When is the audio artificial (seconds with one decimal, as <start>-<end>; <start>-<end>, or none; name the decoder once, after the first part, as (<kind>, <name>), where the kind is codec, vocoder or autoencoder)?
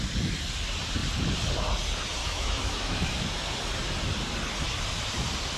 2.2-3.1 (autoencoder, DAC-VAE)